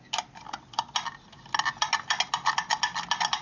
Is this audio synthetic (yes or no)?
no